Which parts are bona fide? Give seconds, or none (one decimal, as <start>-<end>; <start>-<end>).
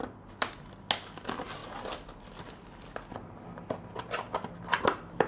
0.0-5.3